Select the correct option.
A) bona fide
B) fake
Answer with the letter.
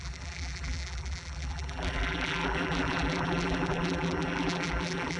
B